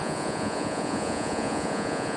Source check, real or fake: fake